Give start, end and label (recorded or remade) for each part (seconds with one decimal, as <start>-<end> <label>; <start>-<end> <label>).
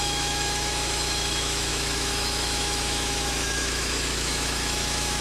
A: 0.0-5.2 remade